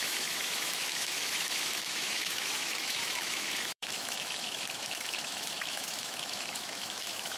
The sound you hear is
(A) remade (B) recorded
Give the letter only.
A